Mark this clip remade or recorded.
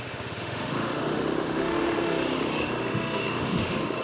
remade